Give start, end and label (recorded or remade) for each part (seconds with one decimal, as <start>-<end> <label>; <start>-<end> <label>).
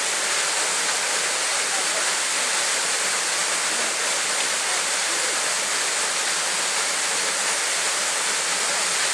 0.0-9.1 recorded